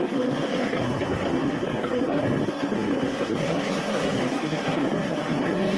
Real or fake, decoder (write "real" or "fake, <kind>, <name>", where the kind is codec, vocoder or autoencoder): fake, codec, SNAC